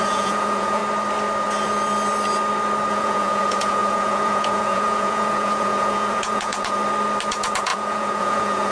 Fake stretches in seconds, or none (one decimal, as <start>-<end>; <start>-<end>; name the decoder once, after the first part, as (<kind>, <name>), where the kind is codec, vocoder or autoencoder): 0.0-0.8 (vocoder, Vocos); 2.9-6.8; 7.3-8.7